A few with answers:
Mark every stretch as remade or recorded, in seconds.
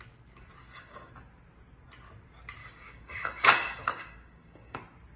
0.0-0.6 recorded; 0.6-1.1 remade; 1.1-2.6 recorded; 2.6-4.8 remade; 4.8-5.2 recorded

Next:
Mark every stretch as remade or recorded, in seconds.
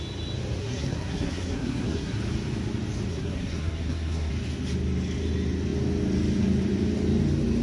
0.0-0.6 recorded; 0.6-2.2 remade; 2.2-3.1 recorded; 3.1-4.3 remade; 4.3-7.6 recorded